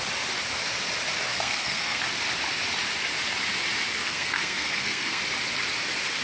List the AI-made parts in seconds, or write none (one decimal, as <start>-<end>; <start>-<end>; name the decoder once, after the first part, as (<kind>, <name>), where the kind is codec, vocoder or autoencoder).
1.3-2.0 (codec, SNAC); 4.0-5.2

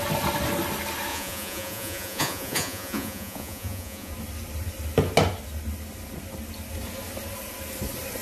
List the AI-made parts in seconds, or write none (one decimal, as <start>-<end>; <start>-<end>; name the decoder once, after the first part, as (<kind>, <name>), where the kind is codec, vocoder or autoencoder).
1.1-4.1 (vocoder, Vocos)